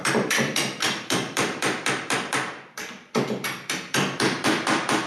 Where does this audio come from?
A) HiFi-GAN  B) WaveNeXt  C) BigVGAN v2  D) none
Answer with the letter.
C